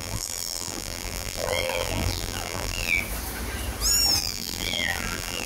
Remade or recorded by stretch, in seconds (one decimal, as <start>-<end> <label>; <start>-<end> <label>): 0.0-3.0 remade; 3.0-4.2 recorded; 4.2-5.5 remade